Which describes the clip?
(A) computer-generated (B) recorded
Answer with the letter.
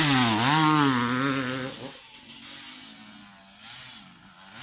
B